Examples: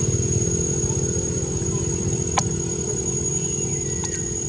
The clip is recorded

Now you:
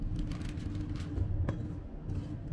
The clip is recorded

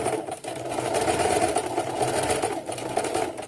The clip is recorded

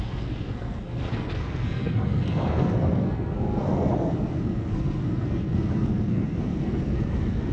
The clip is remade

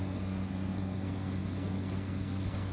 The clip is remade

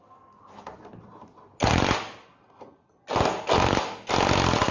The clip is recorded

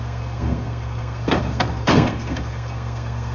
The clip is remade